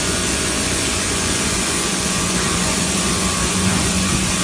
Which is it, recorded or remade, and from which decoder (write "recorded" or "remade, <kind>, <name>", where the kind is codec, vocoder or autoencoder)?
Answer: remade, vocoder, Vocos